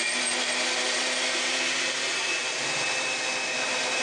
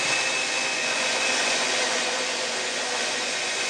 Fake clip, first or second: second